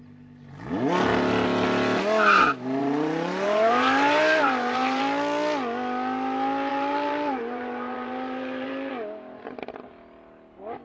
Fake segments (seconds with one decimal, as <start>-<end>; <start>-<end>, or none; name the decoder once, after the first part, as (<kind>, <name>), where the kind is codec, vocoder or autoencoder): 2.8-5.0 (vocoder, BigVGAN v2); 6.7-8.9